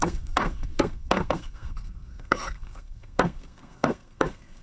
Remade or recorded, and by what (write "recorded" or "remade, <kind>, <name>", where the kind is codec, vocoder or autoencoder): remade, codec, SNAC